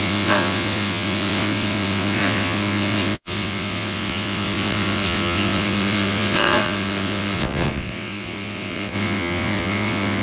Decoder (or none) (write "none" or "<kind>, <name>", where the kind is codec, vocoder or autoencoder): vocoder, WaveNeXt